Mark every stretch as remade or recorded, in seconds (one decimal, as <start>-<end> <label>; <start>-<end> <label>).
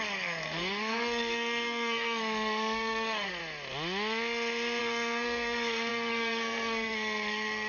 0.0-3.4 remade; 3.4-4.8 recorded; 4.8-7.7 remade